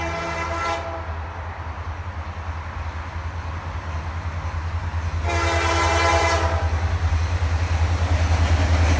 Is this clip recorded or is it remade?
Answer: recorded